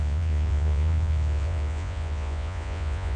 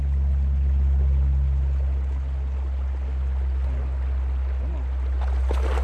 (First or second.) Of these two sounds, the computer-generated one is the first